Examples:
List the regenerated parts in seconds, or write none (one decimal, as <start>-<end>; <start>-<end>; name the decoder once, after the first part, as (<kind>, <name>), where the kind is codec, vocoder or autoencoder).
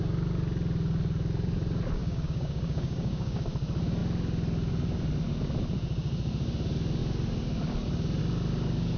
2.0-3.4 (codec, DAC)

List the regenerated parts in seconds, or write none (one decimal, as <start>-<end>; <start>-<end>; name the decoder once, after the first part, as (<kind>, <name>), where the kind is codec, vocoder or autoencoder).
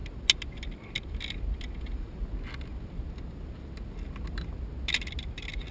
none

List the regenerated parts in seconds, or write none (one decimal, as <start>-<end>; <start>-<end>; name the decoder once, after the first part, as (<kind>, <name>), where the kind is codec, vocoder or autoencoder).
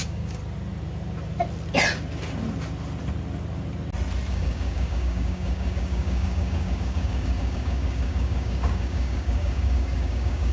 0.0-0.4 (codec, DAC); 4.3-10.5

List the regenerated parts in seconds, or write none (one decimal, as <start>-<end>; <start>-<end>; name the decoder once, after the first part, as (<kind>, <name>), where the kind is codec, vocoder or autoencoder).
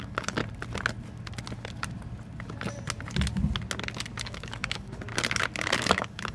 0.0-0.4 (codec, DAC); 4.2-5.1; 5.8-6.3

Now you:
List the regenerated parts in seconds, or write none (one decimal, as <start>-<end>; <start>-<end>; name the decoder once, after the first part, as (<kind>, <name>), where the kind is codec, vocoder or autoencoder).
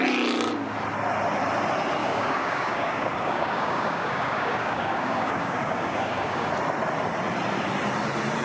2.0-6.5 (codec, DAC)